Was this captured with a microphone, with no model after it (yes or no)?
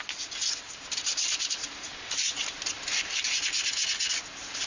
yes